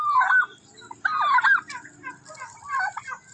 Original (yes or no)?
yes